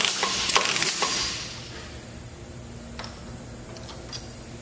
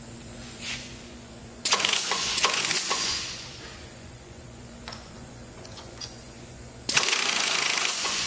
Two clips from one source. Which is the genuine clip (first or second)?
first